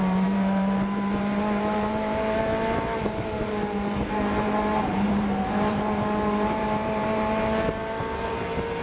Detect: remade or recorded remade